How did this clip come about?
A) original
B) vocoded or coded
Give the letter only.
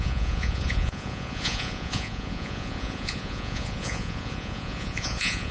B